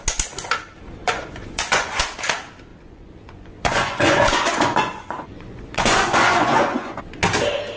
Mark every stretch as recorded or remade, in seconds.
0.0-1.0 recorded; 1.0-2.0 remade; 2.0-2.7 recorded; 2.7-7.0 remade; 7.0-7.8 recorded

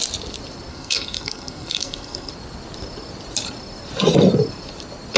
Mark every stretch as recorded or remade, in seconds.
0.0-0.7 recorded; 0.7-2.3 remade; 2.3-5.2 recorded